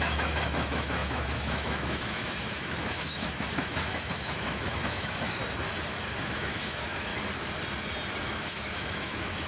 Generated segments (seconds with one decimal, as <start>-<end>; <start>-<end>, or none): 0.0-5.4; 6.2-7.1; 8.2-9.5